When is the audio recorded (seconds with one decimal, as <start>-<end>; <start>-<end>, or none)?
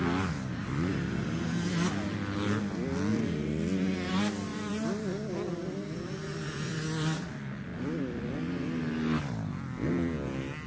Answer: 0.0-4.5; 7.3-10.7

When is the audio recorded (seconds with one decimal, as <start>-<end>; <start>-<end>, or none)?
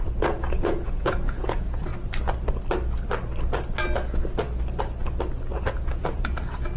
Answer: 1.9-5.9